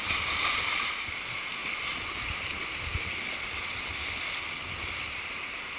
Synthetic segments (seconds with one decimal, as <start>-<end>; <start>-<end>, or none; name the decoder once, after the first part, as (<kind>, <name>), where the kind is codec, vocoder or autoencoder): none